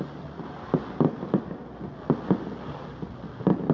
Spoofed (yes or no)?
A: no